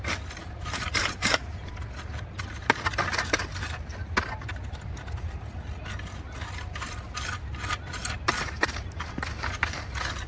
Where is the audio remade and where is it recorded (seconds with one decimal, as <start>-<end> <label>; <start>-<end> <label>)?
0.0-0.4 recorded; 0.4-1.7 remade; 1.7-8.0 recorded; 8.0-8.8 remade; 8.8-10.3 recorded